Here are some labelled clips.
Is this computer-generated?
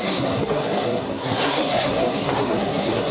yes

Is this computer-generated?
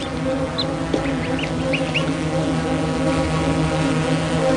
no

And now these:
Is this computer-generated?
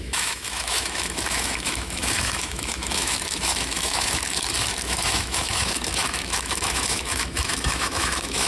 yes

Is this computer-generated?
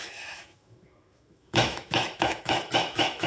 yes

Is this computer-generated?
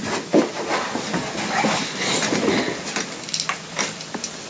no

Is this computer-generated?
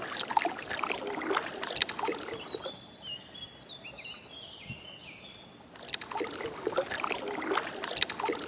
no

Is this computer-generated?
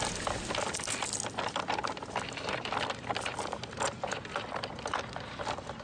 no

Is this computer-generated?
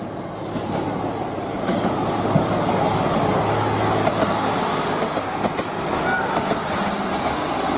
no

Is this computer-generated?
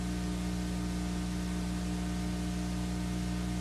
no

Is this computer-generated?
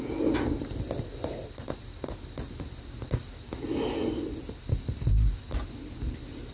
no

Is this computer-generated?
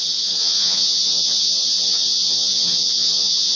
yes